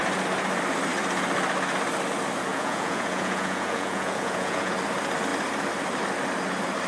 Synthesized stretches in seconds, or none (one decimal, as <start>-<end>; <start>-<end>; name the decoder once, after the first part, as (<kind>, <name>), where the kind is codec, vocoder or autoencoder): 2.5-4.7 (vocoder, Vocos)